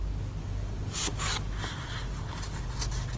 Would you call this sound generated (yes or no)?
no